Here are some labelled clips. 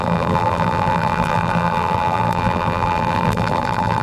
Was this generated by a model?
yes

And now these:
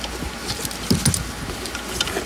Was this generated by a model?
no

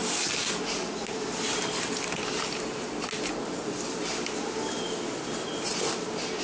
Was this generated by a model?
no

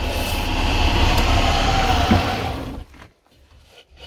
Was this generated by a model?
yes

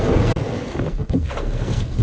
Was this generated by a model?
yes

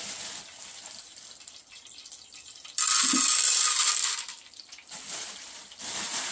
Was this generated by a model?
no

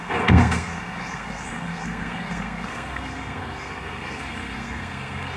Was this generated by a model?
yes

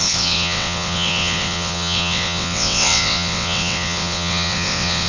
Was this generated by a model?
yes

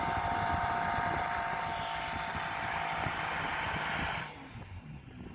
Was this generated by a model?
yes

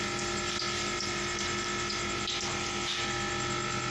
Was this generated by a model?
yes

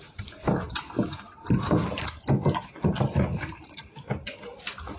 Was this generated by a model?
yes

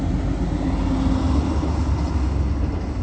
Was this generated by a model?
no